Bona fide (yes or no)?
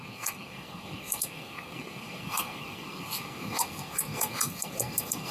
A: no